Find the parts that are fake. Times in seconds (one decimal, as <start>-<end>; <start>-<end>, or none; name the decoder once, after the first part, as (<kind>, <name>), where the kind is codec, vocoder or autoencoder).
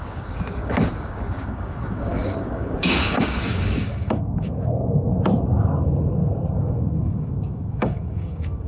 0.0-5.1 (codec, DAC); 6.5-8.7